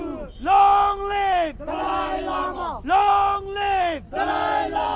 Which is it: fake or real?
real